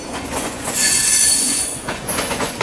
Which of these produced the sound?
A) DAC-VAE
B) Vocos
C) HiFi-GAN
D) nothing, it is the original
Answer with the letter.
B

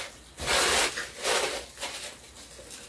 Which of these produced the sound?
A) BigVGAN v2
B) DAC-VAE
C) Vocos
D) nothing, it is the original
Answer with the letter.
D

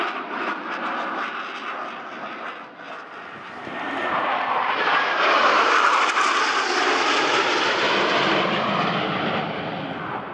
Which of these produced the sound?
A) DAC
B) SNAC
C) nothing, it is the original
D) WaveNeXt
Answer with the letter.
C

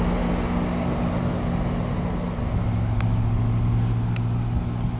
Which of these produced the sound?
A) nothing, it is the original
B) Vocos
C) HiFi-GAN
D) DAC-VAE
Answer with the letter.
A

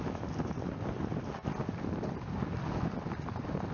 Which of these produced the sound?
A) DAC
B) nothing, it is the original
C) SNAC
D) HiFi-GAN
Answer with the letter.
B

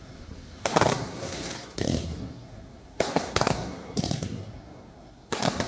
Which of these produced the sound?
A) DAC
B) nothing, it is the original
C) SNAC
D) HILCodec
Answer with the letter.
C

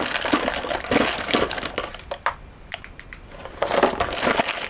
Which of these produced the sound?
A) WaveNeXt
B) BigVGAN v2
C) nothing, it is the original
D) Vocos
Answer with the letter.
C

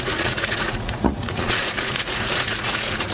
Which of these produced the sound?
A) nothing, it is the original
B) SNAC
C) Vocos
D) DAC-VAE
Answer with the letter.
C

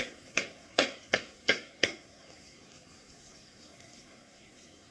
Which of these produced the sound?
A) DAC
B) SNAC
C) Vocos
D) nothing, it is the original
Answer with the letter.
B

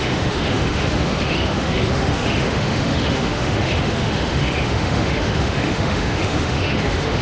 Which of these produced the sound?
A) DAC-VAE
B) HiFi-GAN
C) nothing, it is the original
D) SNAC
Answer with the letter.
A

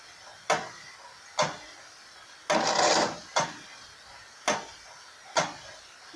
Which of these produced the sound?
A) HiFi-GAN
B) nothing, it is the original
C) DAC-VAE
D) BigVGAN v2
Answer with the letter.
B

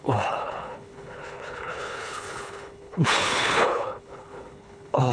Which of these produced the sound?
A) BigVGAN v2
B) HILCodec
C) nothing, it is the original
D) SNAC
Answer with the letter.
B